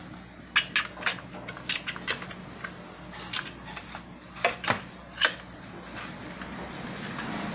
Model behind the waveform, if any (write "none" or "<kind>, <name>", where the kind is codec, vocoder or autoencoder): none